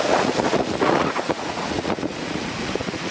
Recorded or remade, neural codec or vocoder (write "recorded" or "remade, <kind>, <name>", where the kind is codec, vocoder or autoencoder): remade, vocoder, Vocos